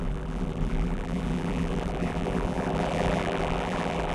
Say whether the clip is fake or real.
fake